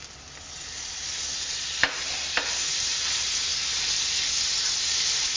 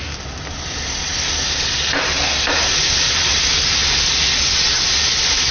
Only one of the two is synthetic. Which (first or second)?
second